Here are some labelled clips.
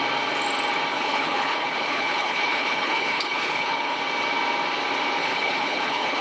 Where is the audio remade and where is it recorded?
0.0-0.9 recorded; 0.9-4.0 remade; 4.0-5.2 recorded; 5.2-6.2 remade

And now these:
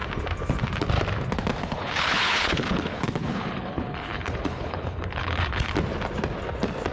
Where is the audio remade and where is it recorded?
0.0-1.6 recorded; 1.6-5.7 remade; 5.7-6.9 recorded

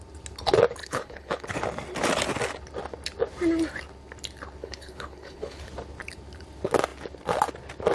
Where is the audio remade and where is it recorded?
0.0-0.8 recorded; 0.8-1.5 remade; 1.5-4.6 recorded; 4.6-5.7 remade; 5.7-7.9 recorded

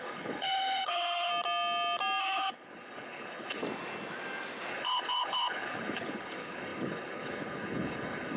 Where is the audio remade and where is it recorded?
0.0-1.3 remade; 1.3-2.2 recorded; 2.2-3.6 remade; 3.6-4.7 recorded; 4.7-8.4 remade

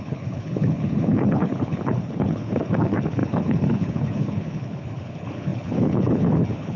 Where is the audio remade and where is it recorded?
0.0-6.8 remade

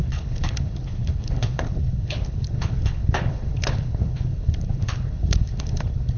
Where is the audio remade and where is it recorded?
0.0-6.2 remade

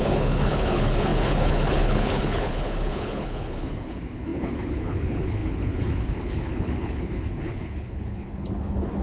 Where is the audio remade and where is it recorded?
0.0-9.0 remade

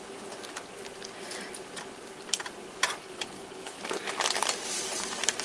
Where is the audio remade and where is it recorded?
0.0-3.0 recorded; 3.0-3.8 remade; 3.8-5.4 recorded